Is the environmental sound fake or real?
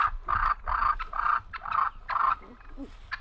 real